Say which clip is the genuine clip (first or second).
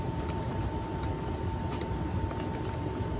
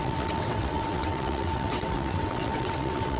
first